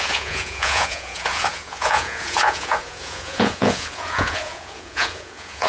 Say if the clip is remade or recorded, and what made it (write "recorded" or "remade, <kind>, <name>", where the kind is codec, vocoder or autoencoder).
remade, vocoder, Vocos